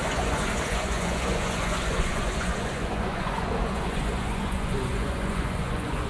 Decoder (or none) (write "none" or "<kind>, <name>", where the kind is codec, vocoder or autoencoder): vocoder, Vocos